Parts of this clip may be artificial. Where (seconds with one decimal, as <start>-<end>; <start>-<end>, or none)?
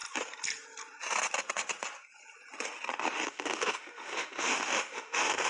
3.3-5.5